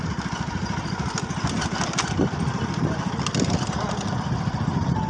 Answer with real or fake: real